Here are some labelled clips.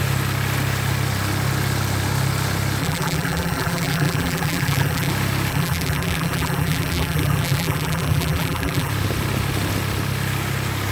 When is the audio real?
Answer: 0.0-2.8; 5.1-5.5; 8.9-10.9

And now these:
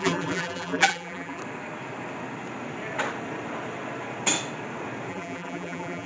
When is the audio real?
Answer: 1.4-5.1

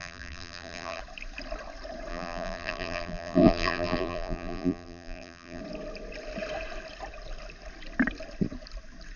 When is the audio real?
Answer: 1.0-2.1; 5.6-9.2

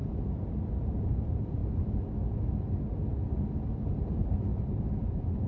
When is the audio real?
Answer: 0.0-0.9; 1.6-4.0

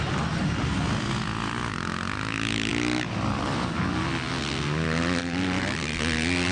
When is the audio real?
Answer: 0.0-5.2; 6.0-6.5

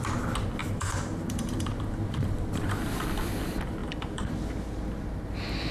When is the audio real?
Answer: 0.0-0.6; 2.9-3.8; 4.3-5.7

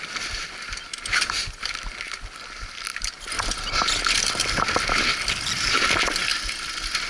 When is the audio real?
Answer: 0.0-6.3

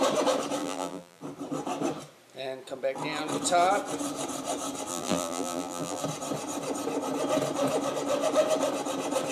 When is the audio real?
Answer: 0.0-0.6; 1.2-4.9; 6.0-9.3